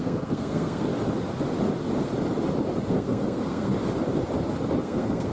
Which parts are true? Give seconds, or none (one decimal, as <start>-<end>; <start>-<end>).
0.9-2.9; 3.7-4.8